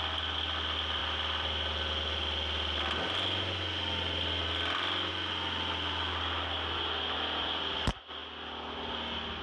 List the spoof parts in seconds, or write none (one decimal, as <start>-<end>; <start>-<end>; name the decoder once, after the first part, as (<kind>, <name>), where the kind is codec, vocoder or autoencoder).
none